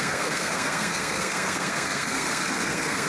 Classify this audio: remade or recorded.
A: remade